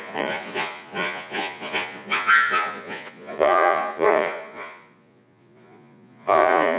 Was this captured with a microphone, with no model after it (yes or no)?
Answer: no